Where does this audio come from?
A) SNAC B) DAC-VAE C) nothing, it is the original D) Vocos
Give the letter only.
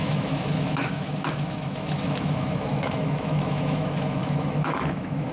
B